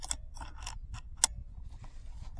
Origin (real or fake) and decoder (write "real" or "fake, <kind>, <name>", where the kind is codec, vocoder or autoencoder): real